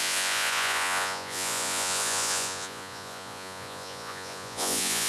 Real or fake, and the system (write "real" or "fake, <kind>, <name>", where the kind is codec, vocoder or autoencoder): fake, vocoder, Vocos